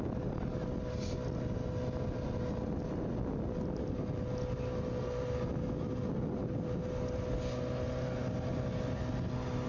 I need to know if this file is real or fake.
real